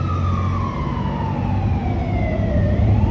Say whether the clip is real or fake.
real